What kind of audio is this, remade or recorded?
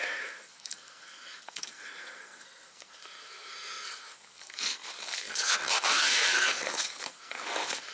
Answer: remade